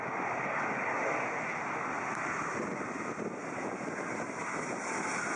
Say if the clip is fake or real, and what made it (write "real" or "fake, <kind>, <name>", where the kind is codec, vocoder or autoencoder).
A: real